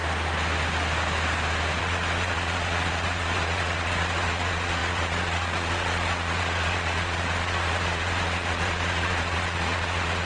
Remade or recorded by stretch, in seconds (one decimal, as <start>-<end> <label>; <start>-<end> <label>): 0.0-1.8 recorded; 1.8-10.2 remade